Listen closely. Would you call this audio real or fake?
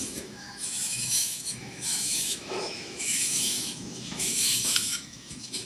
fake